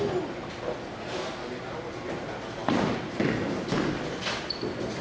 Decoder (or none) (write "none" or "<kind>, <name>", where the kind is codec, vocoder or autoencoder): none